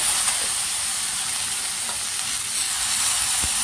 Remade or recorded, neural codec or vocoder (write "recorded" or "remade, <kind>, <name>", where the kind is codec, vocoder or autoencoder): recorded